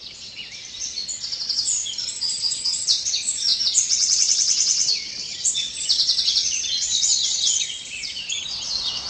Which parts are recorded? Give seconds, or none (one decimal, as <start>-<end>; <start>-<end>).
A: none